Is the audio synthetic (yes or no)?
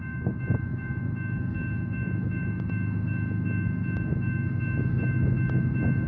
yes